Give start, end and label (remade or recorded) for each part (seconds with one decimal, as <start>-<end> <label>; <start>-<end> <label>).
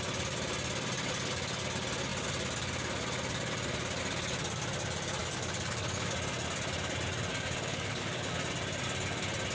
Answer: 0.0-5.2 recorded; 5.2-6.1 remade; 6.1-7.3 recorded; 7.3-8.4 remade; 8.4-9.5 recorded